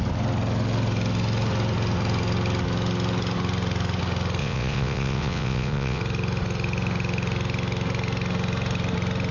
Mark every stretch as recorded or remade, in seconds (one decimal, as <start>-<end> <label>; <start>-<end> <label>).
0.0-4.4 recorded; 4.4-6.0 remade; 6.0-9.3 recorded